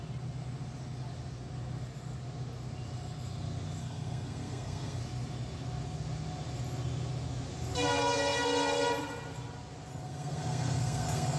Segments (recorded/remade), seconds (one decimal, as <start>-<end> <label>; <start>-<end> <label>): 0.0-3.8 recorded; 3.8-5.0 remade; 5.0-9.9 recorded; 9.9-11.4 remade